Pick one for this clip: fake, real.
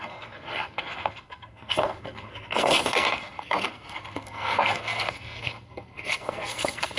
fake